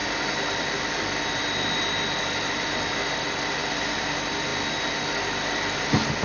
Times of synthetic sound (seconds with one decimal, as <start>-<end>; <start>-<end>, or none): none